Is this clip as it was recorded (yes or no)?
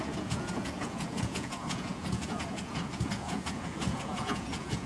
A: no